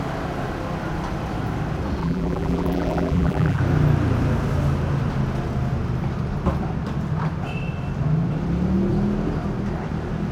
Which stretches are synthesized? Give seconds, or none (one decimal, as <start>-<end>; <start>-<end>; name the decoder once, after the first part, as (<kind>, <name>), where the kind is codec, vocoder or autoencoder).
2.0-3.6 (vocoder, BigVGAN v2)